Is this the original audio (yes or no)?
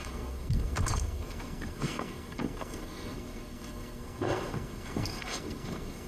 no